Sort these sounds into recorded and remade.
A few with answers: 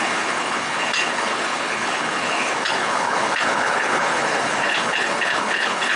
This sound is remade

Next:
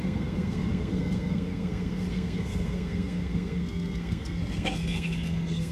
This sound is remade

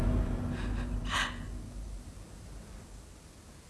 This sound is recorded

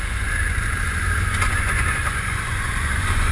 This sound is remade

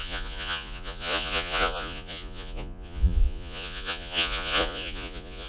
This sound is remade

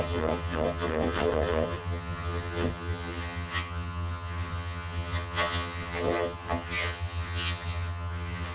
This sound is remade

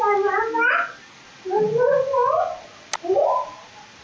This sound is recorded